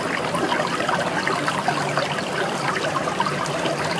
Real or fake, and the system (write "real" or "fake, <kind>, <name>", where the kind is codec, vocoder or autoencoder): real